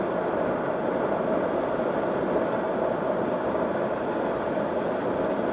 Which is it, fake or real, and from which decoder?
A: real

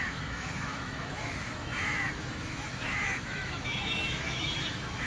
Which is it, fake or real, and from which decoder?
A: fake, autoencoder, DAC-VAE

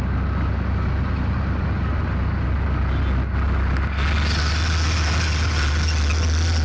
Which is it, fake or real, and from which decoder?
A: real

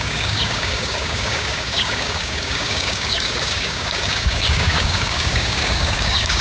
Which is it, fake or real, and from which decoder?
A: fake, codec, DAC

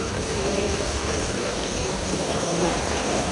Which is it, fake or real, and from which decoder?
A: fake, codec, DAC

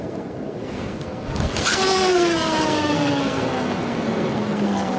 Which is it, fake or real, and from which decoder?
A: fake, codec, SNAC